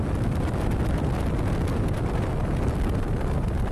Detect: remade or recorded recorded